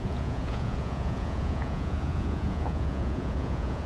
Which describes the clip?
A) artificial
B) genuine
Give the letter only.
A